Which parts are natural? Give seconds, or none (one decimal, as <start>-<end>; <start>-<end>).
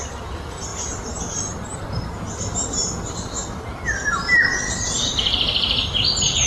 0.0-6.5